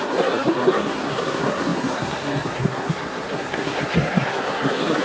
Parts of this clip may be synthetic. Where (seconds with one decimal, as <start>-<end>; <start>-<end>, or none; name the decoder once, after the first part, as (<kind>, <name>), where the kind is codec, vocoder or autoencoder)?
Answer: 0.0-5.0 (codec, SNAC)